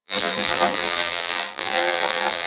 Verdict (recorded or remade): remade